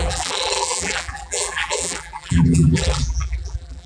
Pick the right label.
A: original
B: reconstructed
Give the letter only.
B